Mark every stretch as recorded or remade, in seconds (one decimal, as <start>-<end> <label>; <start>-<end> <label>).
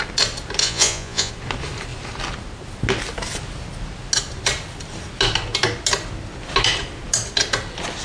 0.0-0.6 recorded; 0.6-1.3 remade; 1.3-8.0 recorded